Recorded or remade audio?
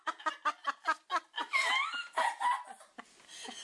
recorded